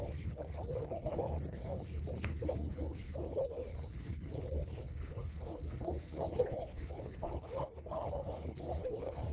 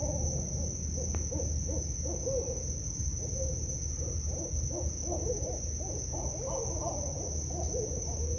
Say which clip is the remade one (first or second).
first